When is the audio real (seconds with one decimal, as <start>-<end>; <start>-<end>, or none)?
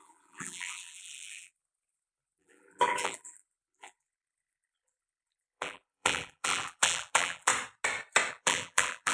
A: 7.5-8.3